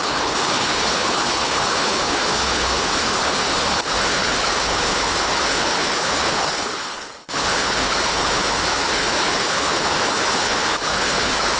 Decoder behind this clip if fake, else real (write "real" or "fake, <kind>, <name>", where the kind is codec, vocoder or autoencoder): fake, codec, HILCodec